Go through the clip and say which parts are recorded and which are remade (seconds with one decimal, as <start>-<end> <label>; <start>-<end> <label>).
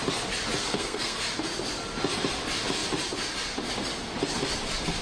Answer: 0.0-0.6 recorded; 0.6-1.2 remade; 1.2-5.0 recorded